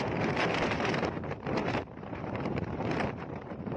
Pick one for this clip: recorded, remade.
remade